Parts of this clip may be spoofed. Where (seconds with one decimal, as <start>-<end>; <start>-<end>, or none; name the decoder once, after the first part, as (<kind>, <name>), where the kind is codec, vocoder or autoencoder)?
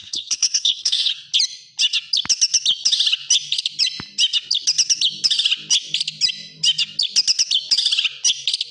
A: 0.0-1.1 (codec, SNAC)